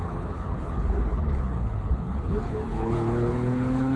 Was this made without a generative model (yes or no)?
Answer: no